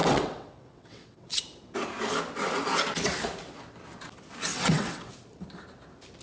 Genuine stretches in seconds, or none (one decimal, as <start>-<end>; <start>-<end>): 1.4-4.5; 5.1-6.2